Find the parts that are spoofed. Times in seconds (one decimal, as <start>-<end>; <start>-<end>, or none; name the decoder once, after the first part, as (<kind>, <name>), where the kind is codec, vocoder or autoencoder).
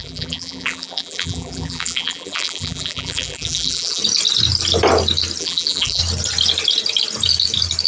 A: 0.0-4.0 (vocoder, BigVGAN v2); 5.4-6.0